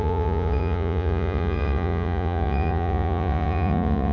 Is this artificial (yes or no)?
yes